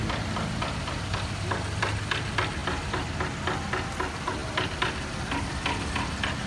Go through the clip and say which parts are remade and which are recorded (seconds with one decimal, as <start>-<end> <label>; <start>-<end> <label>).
0.0-6.5 recorded